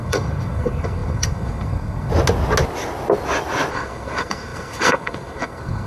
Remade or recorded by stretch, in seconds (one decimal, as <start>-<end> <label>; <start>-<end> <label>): 0.0-2.1 remade; 2.1-3.7 recorded; 3.7-5.9 remade